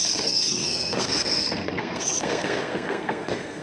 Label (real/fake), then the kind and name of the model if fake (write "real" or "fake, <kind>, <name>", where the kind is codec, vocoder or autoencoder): fake, codec, SNAC